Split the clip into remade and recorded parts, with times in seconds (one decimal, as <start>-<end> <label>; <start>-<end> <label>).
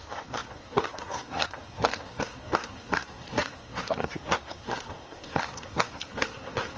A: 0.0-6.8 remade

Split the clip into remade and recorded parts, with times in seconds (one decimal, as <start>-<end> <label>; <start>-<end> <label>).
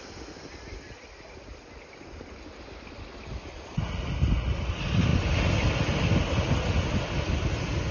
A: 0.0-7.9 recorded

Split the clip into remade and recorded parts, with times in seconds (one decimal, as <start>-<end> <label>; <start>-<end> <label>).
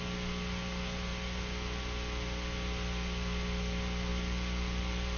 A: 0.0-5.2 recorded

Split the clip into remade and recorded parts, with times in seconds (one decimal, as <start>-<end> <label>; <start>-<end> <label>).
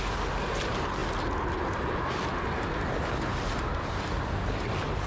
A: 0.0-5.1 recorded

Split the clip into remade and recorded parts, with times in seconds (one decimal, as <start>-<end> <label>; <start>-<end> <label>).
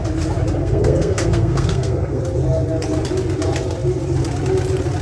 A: 0.0-0.6 recorded; 0.6-2.2 remade; 2.2-5.0 recorded